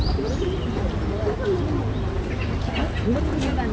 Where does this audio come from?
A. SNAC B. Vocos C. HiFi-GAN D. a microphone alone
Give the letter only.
D